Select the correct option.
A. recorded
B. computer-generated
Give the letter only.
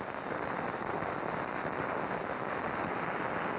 A